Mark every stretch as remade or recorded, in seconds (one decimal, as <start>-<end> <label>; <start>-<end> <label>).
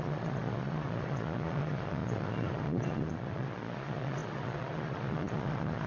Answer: 0.0-5.9 remade